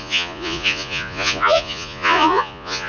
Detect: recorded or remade remade